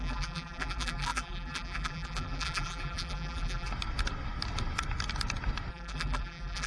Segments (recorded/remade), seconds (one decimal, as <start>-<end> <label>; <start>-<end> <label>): 0.0-3.7 remade; 3.7-5.7 recorded; 5.7-6.7 remade